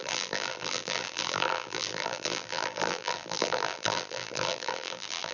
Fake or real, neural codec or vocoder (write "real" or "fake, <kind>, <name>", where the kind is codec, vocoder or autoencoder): fake, vocoder, BigVGAN v2